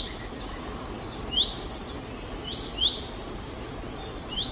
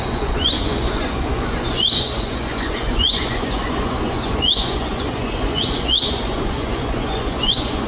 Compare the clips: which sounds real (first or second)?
first